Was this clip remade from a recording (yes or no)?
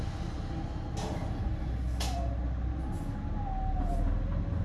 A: no